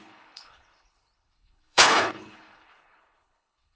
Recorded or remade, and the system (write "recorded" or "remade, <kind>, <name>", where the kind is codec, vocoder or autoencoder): remade, codec, HILCodec